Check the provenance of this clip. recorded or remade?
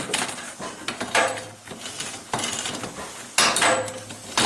recorded